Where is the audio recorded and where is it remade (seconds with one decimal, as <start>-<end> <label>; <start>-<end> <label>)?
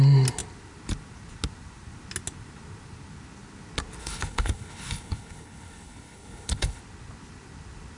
0.0-4.0 recorded; 4.0-6.8 remade; 6.8-8.0 recorded